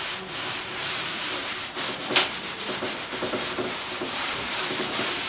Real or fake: fake